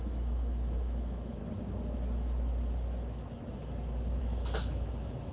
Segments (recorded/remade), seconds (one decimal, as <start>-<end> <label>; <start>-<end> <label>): 0.0-1.4 remade; 1.4-4.2 recorded; 4.2-5.3 remade